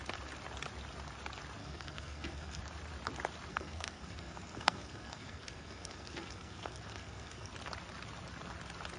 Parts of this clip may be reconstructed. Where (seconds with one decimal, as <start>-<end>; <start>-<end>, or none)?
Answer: 1.6-2.6; 3.5-7.5